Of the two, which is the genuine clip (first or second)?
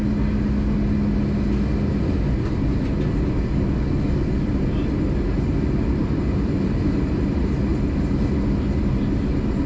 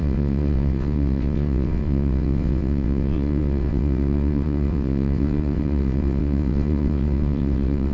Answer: first